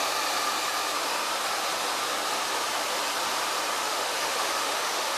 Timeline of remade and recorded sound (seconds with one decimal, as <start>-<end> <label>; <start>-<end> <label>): 0.0-3.8 recorded; 3.8-5.2 remade